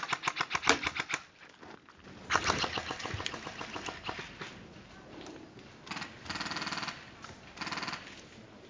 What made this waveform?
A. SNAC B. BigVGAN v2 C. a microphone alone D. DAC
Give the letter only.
C